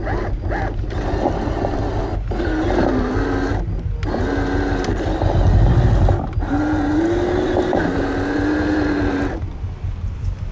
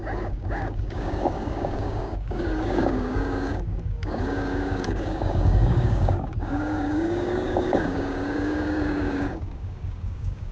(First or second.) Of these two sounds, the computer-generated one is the second